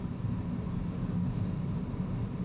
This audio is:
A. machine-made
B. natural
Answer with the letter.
B